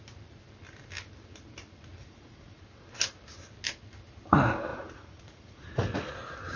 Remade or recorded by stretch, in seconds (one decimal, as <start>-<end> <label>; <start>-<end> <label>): 0.0-2.0 recorded; 2.0-2.6 remade; 2.6-4.7 recorded; 4.7-6.1 remade; 6.1-6.6 recorded